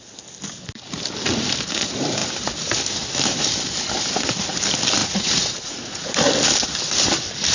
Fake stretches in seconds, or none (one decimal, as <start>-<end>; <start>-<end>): 5.0-6.1